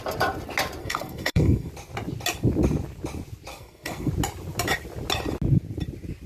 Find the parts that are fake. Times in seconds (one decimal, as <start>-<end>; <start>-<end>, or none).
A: 0.8-1.7; 3.5-4.1